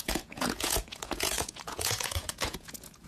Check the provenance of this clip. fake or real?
fake